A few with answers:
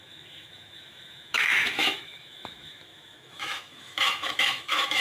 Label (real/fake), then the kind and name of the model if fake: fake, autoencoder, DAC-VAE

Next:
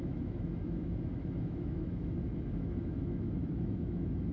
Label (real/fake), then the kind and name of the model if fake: fake, autoencoder, DAC-VAE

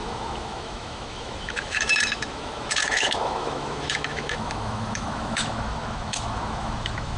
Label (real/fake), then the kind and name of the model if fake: fake, autoencoder, DAC-VAE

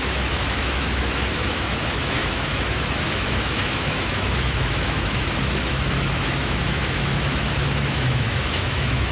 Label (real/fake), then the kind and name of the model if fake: fake, autoencoder, DAC-VAE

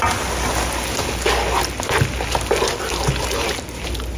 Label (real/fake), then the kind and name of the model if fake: real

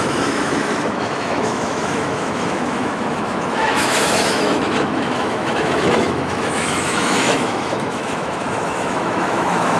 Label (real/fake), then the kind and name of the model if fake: fake, autoencoder, DAC-VAE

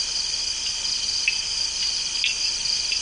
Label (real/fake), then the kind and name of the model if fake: real